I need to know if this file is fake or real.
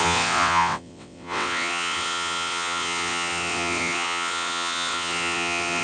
fake